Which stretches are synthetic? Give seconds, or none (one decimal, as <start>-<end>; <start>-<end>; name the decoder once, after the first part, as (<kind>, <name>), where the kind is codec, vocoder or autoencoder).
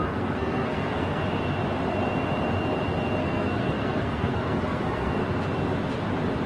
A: 0.0-1.2 (codec, SNAC); 3.2-5.2